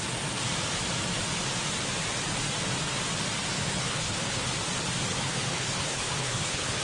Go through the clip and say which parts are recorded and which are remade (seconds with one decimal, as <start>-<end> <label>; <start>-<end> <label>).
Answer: 0.0-3.5 recorded; 3.5-4.5 remade; 4.5-5.1 recorded; 5.1-6.8 remade